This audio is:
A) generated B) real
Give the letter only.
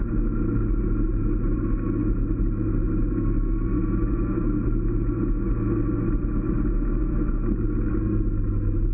B